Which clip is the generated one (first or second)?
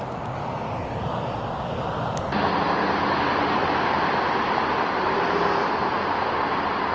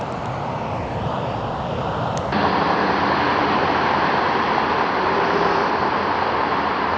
second